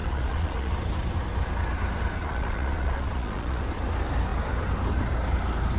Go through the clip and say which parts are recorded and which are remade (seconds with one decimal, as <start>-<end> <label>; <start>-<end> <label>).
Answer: 0.0-0.7 remade; 0.7-2.2 recorded; 2.2-3.6 remade; 3.6-5.8 recorded